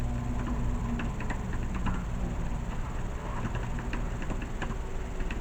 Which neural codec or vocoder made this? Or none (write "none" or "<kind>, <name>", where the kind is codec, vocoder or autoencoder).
none